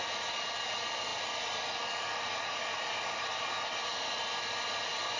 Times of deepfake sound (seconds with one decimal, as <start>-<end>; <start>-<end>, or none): none